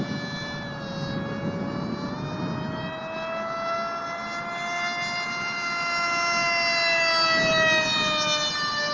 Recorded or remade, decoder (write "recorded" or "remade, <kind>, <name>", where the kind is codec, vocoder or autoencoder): recorded